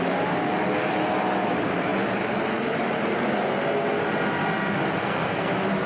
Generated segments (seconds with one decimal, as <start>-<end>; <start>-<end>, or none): 5.0-5.5